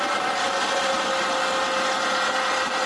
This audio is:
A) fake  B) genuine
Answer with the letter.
B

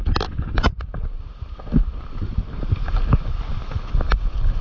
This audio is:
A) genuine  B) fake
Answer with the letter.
A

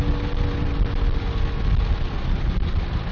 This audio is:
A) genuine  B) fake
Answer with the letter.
A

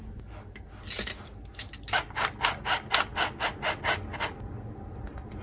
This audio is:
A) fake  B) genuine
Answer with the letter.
B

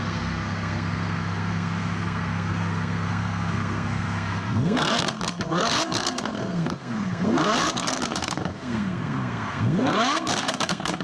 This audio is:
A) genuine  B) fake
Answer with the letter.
B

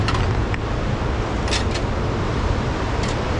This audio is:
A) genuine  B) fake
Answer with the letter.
A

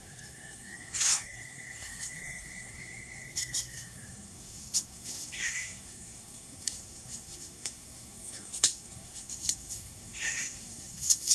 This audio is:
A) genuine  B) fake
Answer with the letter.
B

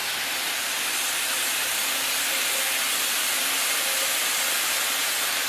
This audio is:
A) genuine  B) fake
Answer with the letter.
A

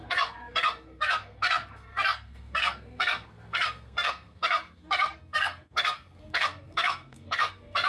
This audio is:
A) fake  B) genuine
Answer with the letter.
A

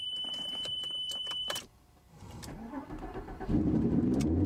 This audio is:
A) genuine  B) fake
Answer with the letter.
B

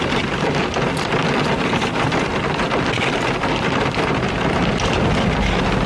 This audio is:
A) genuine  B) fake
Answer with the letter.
A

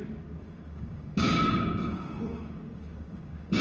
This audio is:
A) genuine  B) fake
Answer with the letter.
B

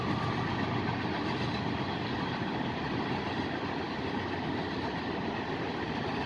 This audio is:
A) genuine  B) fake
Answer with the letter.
A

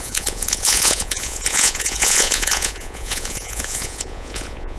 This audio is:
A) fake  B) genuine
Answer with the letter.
A